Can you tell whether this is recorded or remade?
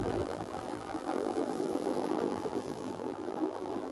remade